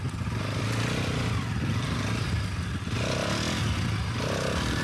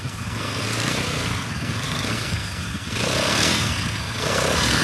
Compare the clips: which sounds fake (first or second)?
second